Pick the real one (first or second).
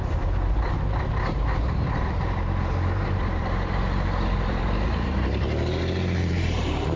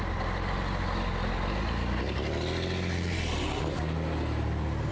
second